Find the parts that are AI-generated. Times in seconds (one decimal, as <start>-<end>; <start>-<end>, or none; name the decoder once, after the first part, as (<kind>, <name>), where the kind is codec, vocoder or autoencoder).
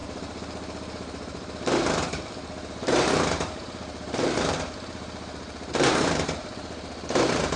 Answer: 0.0-7.6 (vocoder, BigVGAN v2)